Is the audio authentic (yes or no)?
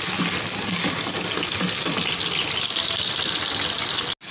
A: yes